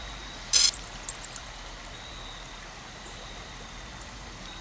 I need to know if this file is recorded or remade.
recorded